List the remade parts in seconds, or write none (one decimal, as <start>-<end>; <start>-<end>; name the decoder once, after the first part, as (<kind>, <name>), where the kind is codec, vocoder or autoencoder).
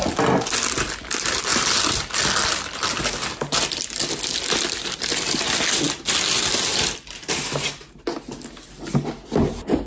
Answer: none